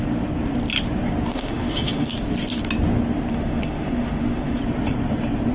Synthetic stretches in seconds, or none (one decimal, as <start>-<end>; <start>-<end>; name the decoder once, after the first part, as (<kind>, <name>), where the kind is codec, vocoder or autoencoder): 1.3-2.1 (autoencoder, DAC-VAE); 3.3-4.6